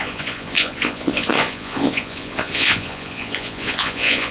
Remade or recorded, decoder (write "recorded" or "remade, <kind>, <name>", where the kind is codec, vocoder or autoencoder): remade, vocoder, Vocos